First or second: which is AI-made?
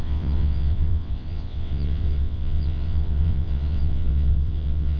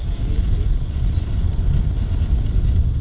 first